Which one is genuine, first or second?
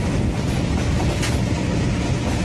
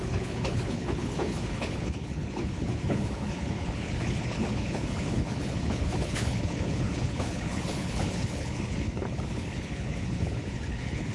first